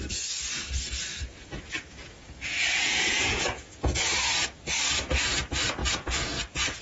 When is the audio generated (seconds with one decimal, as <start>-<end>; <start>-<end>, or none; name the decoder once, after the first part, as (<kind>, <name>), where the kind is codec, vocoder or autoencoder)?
1.1-3.9 (vocoder, Vocos); 5.8-6.8